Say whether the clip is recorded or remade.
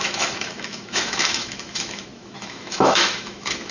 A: remade